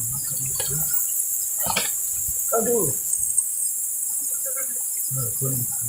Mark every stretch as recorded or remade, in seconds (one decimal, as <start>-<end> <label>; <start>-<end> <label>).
0.0-3.0 recorded; 3.0-3.6 remade; 3.6-5.9 recorded